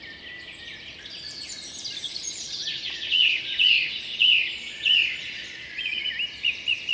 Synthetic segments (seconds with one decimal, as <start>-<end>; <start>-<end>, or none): 2.0-6.1